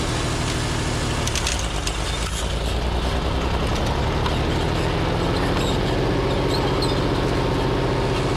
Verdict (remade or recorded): recorded